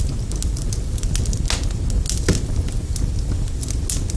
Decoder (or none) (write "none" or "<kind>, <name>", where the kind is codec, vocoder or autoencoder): none